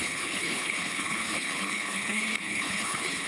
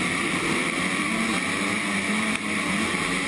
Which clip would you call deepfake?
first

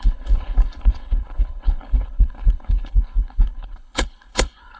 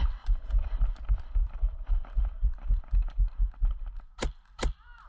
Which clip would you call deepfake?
first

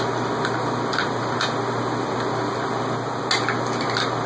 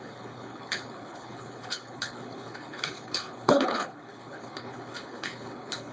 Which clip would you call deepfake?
second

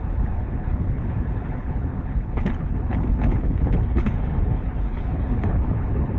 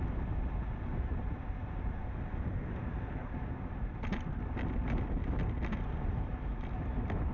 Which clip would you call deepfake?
first